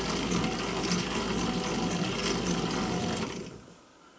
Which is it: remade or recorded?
recorded